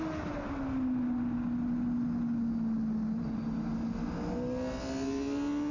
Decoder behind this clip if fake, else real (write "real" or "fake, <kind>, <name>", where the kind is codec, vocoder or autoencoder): real